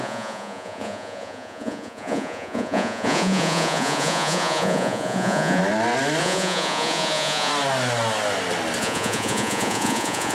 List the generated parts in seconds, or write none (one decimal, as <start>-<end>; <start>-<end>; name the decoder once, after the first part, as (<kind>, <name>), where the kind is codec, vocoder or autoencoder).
0.0-5.6 (vocoder, Vocos); 6.2-7.5; 8.8-10.3

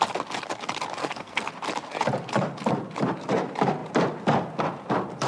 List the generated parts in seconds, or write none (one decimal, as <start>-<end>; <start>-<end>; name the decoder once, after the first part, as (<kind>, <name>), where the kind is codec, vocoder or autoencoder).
1.0-1.5 (codec, SNAC)

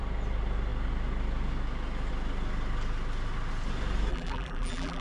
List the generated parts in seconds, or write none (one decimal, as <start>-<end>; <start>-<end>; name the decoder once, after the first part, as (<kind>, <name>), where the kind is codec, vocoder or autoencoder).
4.1-5.0 (vocoder, BigVGAN v2)

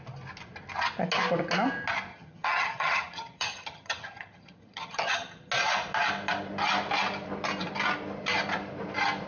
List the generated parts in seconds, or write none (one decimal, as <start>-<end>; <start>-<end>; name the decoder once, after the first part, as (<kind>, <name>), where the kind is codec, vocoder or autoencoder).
2.1-5.5 (vocoder, HiFi-GAN)

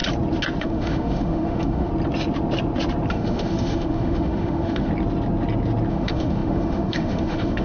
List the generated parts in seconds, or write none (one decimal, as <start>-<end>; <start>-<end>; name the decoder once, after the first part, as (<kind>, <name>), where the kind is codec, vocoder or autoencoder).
0.6-1.9 (autoencoder, DAC-VAE); 3.1-4.9; 5.9-7.6